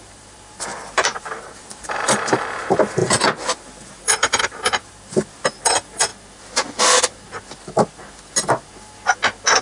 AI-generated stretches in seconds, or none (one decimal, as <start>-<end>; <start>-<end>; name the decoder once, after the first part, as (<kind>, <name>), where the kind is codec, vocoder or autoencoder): 0.0-6.1 (vocoder, BigVGAN v2)